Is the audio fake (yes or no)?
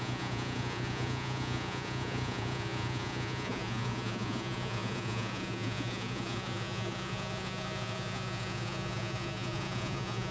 yes